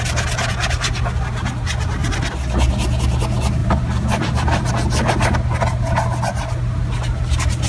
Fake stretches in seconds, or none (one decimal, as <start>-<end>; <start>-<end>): 3.6-4.7